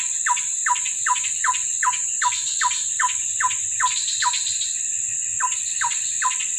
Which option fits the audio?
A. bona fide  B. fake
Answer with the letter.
A